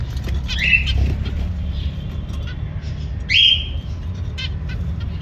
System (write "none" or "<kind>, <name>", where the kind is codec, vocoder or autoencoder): none